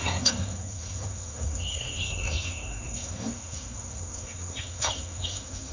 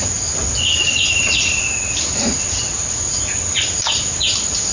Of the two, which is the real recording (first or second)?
second